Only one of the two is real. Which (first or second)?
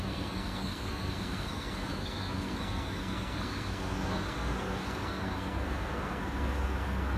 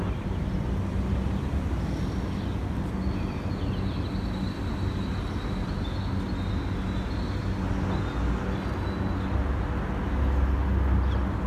second